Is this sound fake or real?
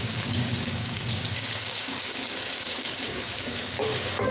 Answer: fake